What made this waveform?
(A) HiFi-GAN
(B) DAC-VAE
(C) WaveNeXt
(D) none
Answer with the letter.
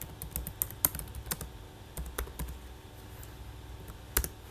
D